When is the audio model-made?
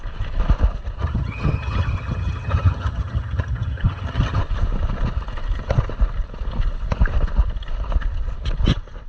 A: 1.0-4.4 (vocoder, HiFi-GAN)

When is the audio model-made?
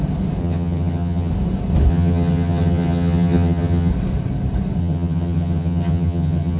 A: 0.4-1.3 (vocoder, HiFi-GAN); 1.9-3.9; 4.8-6.6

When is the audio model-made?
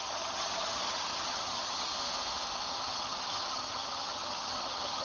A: 0.0-1.9 (vocoder, HiFi-GAN); 2.7-5.0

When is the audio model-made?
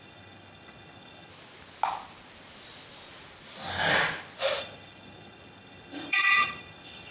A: 0.0-1.3 (vocoder, HiFi-GAN); 4.6-7.1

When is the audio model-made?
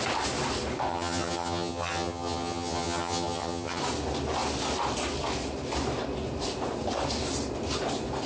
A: 0.9-3.8 (vocoder, HiFi-GAN)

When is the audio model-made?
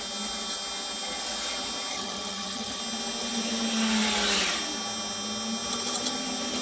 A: 1.9-2.8 (vocoder, HiFi-GAN)